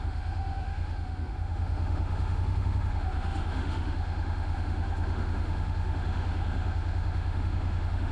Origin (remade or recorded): remade